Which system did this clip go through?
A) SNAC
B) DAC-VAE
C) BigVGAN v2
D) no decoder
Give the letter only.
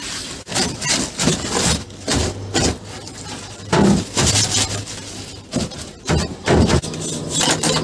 C